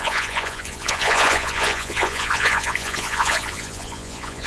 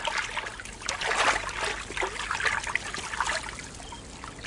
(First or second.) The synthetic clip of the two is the first